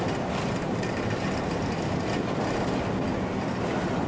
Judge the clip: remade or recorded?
recorded